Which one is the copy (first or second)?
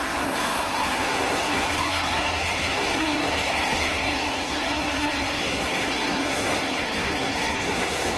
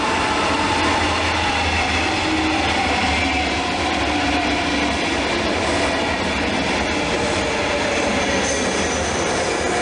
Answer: first